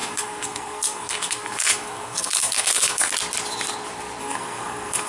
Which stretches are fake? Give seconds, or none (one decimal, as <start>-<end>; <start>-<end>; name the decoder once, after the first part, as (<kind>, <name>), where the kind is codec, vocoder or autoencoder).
0.0-3.1 (codec, SNAC); 4.2-5.1